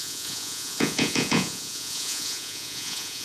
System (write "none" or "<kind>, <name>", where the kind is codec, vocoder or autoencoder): vocoder, Vocos